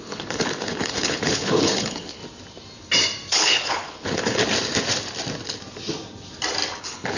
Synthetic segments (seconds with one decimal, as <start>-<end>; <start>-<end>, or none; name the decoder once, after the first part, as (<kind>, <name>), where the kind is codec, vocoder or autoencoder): 0.0-2.2 (codec, HILCodec); 3.3-4.4; 6.8-7.2